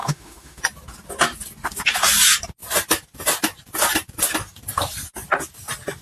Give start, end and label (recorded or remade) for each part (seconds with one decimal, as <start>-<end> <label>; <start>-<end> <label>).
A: 0.0-0.6 remade; 0.6-6.0 recorded